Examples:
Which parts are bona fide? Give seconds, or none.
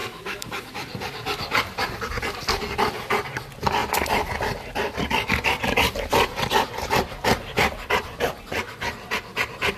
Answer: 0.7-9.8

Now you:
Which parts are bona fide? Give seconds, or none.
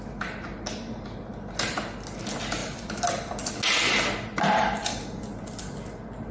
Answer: 0.0-2.6; 3.5-4.8; 5.6-6.3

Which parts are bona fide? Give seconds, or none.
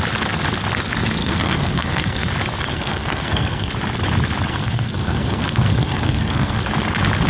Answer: 0.0-1.2; 2.3-2.7; 3.7-4.5; 6.6-7.3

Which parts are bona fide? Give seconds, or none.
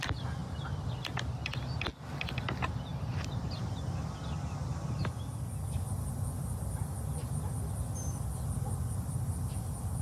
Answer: 0.0-10.0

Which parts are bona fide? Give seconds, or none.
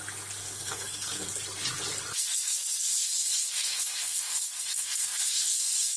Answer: 0.0-0.4; 1.3-2.1